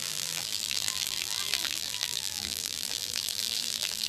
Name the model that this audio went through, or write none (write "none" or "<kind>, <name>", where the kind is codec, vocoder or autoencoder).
vocoder, BigVGAN v2